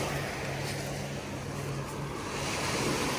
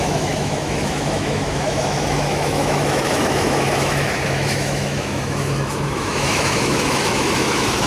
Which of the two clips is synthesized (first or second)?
second